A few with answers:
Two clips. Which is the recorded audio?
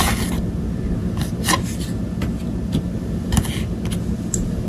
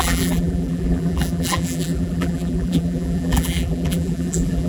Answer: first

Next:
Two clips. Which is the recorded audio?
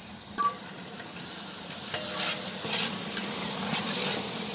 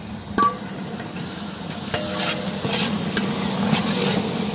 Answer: second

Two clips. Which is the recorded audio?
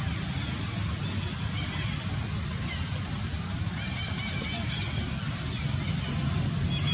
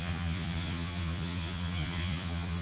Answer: first